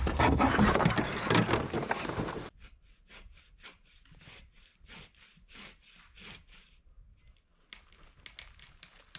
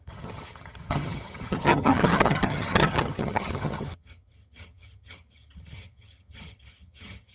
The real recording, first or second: first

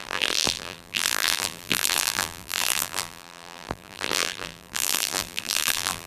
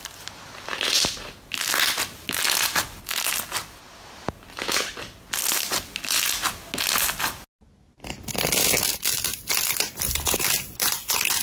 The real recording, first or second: second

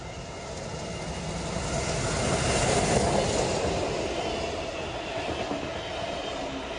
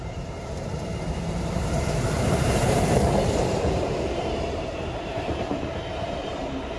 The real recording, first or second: first